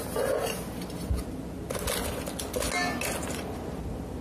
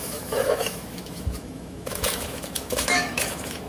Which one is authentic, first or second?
first